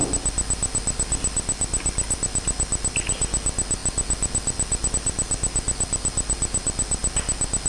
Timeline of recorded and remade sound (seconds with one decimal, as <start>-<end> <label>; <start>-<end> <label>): 0.0-7.7 recorded